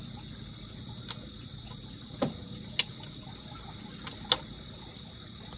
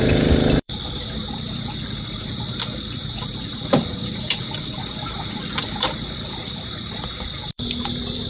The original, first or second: first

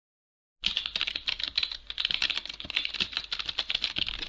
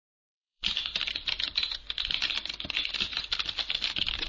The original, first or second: first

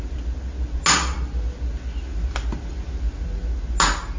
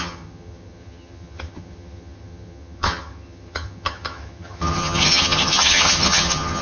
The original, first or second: first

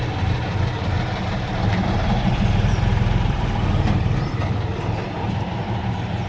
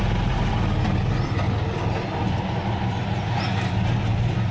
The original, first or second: second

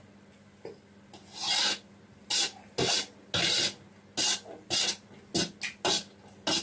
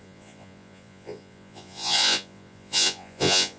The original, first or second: first